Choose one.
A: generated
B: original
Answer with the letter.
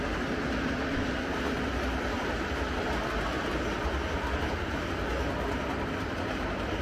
B